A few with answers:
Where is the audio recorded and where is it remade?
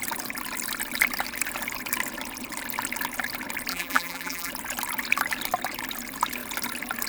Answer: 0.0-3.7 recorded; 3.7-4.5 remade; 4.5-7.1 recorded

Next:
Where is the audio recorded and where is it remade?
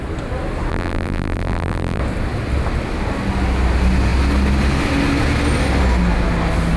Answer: 0.0-0.7 recorded; 0.7-2.0 remade; 2.0-6.8 recorded